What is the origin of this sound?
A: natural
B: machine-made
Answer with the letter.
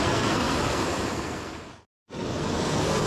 B